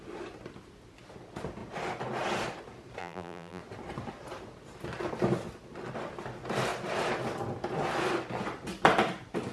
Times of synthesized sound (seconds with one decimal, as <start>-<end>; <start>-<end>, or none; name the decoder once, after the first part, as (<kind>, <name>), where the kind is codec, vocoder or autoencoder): 3.0-3.6 (vocoder, BigVGAN v2)